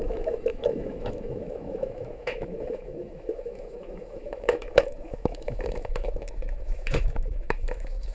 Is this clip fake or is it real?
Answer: fake